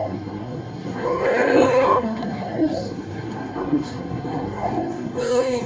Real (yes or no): no